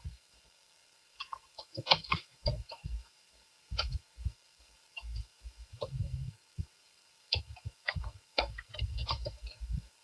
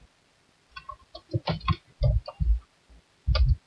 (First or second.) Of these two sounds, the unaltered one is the second